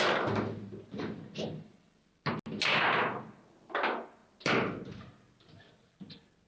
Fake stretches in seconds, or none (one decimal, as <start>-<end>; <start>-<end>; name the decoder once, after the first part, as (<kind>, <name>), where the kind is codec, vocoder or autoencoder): none